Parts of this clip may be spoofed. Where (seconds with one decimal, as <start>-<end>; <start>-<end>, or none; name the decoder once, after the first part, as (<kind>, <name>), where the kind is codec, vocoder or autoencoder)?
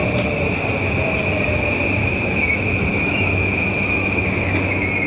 2.0-5.1 (autoencoder, DAC-VAE)